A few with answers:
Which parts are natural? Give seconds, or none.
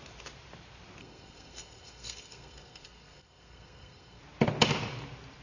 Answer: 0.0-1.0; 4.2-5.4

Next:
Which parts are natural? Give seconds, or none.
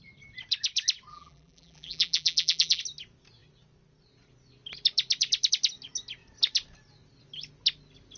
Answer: 0.0-1.1; 2.8-8.2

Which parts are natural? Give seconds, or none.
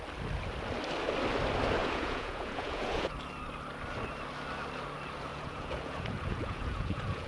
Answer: 0.0-1.8; 3.1-5.3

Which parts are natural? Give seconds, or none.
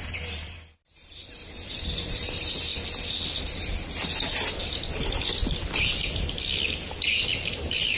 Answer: 2.7-7.5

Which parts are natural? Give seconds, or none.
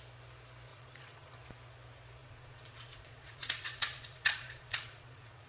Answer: 0.0-0.7; 1.3-2.2